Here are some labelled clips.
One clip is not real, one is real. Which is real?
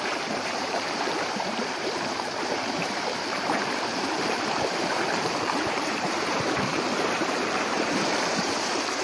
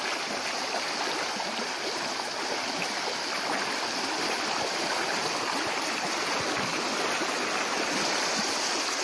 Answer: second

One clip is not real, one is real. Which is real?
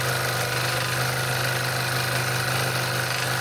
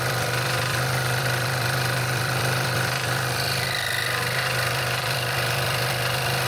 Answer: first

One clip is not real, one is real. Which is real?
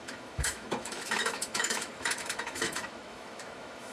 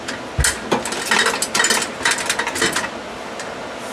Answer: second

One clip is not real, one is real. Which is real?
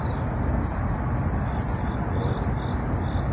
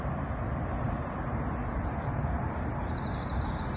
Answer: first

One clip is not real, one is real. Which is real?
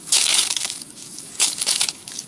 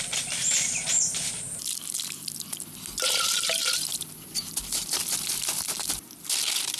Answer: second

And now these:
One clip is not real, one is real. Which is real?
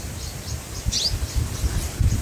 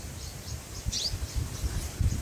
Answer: first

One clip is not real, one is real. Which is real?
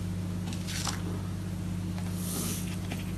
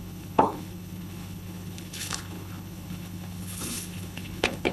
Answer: first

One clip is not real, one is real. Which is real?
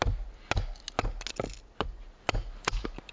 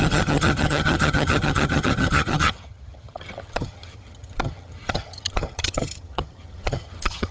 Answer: first